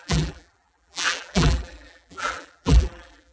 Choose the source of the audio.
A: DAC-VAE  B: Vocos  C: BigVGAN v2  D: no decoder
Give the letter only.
C